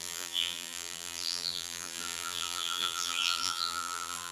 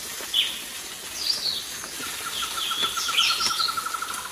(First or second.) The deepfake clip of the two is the first